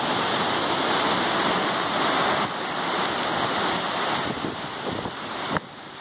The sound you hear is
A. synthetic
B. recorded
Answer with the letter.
B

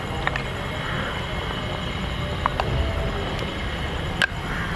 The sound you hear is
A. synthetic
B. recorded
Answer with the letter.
B